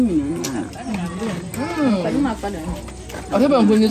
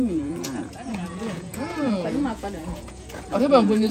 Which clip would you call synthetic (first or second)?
second